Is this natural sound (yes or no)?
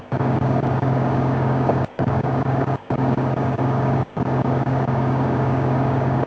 no